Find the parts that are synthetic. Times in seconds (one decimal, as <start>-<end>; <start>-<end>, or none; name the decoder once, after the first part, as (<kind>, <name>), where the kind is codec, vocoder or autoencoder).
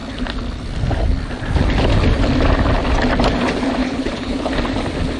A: 3.8-4.5 (codec, HILCodec)